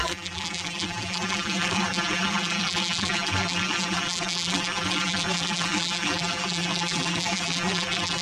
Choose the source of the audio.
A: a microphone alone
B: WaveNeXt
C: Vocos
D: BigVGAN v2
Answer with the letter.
D